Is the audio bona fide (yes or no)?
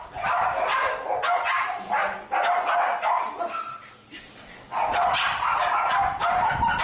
yes